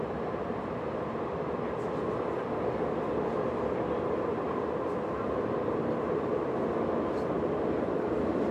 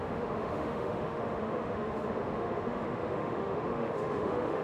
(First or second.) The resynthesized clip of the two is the second